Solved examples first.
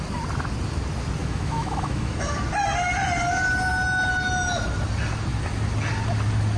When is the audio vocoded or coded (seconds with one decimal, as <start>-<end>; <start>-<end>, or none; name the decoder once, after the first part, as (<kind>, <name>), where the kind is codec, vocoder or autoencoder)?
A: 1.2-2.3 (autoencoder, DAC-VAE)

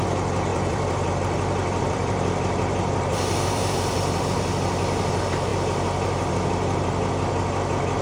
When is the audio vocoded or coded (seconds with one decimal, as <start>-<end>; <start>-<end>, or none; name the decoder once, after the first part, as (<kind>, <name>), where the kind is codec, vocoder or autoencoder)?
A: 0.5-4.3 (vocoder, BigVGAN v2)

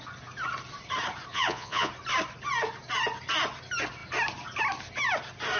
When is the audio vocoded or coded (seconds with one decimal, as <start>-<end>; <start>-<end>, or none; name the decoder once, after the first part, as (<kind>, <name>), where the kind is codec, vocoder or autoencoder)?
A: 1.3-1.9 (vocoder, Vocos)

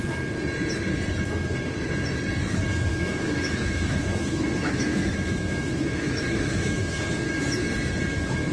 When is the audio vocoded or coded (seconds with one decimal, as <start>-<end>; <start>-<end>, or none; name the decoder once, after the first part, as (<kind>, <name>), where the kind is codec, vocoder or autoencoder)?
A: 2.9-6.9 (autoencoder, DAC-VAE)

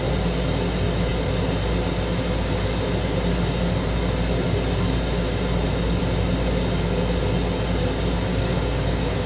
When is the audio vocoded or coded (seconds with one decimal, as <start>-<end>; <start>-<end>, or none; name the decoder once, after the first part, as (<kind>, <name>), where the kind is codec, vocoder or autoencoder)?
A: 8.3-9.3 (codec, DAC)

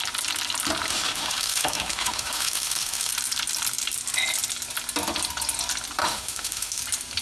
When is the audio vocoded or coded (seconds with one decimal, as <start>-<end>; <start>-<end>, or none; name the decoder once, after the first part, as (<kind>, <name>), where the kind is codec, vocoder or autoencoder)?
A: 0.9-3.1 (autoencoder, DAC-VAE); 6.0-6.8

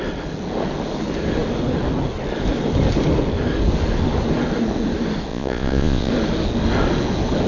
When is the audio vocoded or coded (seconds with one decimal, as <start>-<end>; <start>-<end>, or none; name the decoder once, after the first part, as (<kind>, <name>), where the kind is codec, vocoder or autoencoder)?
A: 5.3-6.1 (vocoder, Vocos)

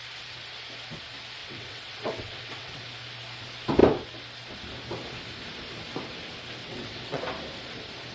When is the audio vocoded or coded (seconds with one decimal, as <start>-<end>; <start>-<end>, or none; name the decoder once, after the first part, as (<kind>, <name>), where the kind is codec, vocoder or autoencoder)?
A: 1.4-2.8 (vocoder, WaveNeXt); 6.6-7.2